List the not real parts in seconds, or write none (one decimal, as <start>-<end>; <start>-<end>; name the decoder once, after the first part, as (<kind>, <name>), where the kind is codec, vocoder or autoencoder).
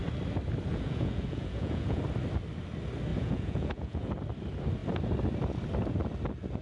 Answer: 0.7-2.0 (vocoder, Vocos); 3.1-4.1